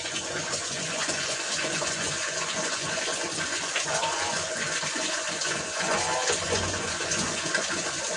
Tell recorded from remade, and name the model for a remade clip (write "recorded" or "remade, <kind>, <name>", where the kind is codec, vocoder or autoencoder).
remade, vocoder, Vocos